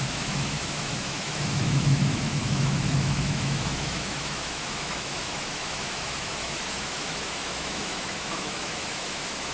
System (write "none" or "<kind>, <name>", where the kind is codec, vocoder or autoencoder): autoencoder, DAC-VAE